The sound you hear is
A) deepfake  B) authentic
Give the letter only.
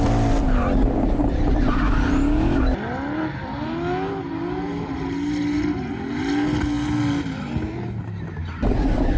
B